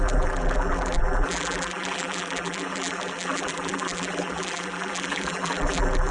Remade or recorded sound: remade